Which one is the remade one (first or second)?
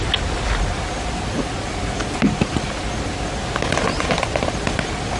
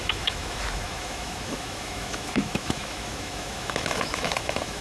second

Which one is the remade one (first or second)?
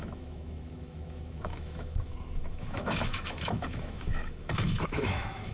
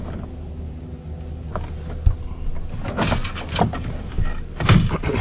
first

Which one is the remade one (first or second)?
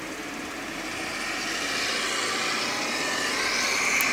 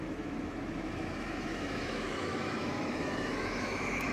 second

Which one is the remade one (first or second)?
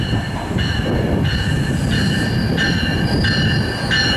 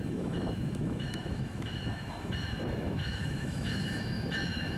second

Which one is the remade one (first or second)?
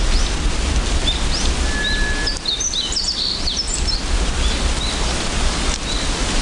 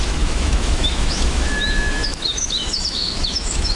second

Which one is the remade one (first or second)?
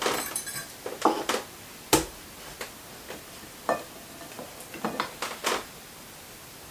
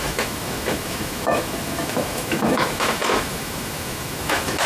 second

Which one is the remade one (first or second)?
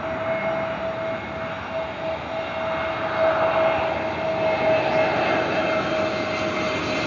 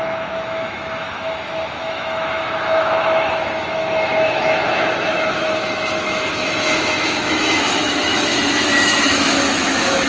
second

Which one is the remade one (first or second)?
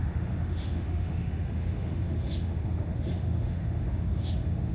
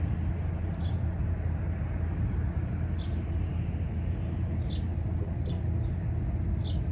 first